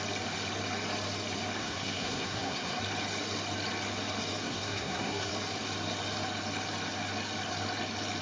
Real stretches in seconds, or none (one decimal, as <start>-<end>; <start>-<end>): 0.0-1.6; 2.8-4.4; 5.3-8.2